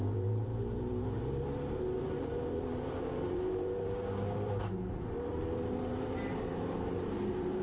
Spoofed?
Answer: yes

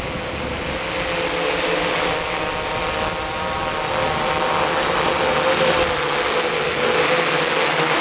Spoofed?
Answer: no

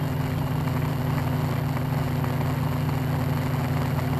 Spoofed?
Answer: no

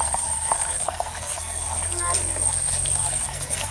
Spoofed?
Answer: yes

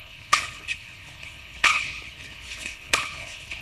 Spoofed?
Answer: yes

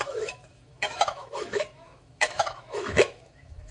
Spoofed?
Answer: yes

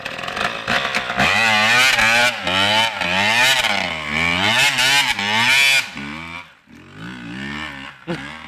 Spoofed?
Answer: no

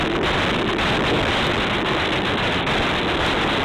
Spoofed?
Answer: no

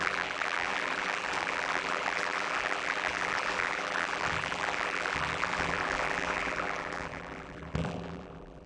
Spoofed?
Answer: yes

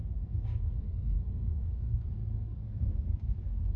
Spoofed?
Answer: yes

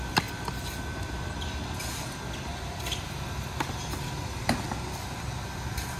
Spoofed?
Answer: no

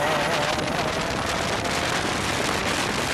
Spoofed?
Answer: no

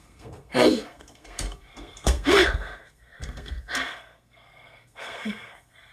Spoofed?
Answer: yes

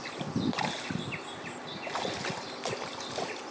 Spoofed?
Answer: no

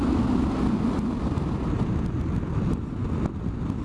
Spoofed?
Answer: no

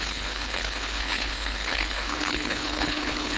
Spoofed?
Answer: yes